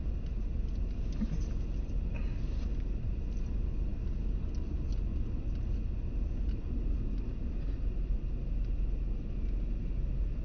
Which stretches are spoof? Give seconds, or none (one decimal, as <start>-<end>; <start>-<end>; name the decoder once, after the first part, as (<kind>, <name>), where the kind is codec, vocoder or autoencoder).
none